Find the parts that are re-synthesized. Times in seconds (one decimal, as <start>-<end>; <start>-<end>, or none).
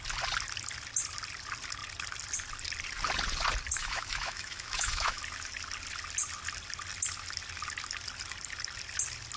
3.8-5.2